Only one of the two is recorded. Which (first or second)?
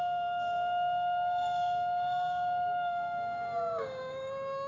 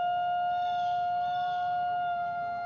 second